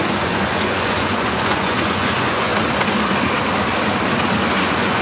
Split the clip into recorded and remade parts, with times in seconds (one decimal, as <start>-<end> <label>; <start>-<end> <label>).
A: 0.0-2.5 remade; 2.5-4.6 recorded; 4.6-5.0 remade